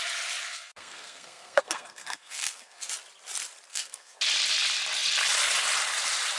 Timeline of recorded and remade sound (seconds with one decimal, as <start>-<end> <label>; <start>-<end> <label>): 0.0-0.5 recorded; 0.5-2.9 remade; 2.9-3.7 recorded; 3.7-4.2 remade; 4.2-6.4 recorded

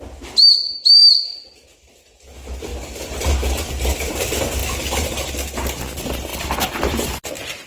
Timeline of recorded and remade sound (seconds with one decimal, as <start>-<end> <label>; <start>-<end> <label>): 0.0-0.6 recorded; 0.6-1.7 remade; 1.7-2.7 recorded; 2.7-3.2 remade; 3.2-6.3 recorded; 6.3-7.3 remade; 7.3-7.7 recorded

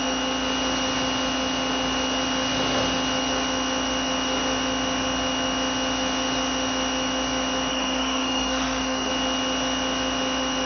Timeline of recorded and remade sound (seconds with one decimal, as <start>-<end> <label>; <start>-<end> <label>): 0.0-7.7 recorded; 7.7-9.1 remade; 9.1-10.7 recorded

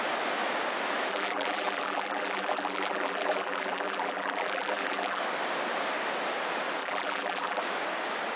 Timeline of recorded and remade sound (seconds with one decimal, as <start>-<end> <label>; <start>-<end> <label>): 0.0-1.1 recorded; 1.1-5.2 remade; 5.2-6.8 recorded; 6.8-7.6 remade; 7.6-8.4 recorded

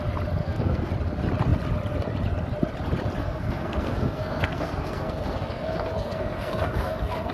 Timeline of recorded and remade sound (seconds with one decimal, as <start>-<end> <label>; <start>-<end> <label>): 0.0-0.4 recorded; 0.4-0.9 remade; 0.9-3.2 recorded; 3.2-7.3 remade

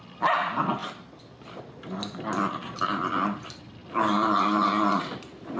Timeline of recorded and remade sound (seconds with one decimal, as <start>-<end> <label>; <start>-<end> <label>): 0.0-5.6 recorded